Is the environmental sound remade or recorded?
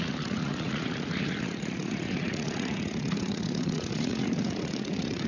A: remade